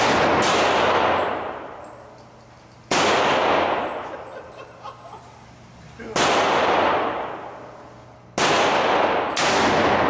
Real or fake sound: real